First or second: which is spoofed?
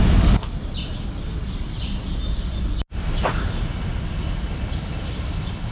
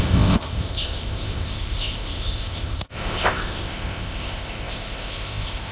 second